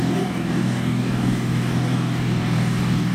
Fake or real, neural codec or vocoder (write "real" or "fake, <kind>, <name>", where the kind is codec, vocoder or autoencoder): fake, codec, DAC